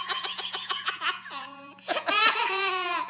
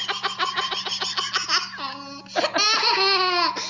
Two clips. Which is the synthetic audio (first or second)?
first